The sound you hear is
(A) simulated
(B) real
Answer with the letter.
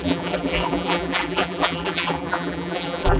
A